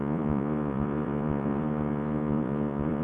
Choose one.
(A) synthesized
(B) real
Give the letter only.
A